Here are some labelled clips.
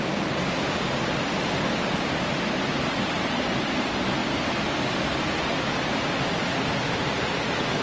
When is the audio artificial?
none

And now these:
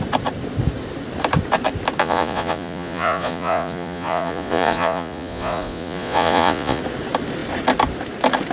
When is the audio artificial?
2.0-6.8 (vocoder, Vocos)

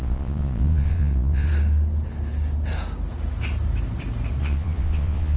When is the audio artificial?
0.0-1.5 (vocoder, Vocos); 4.4-5.4